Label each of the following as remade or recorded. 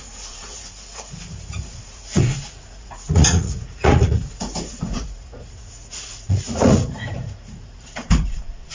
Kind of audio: remade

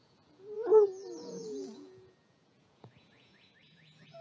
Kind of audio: remade